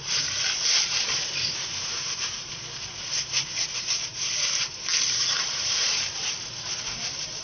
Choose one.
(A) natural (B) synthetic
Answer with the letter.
B